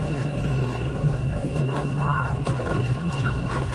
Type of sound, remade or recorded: remade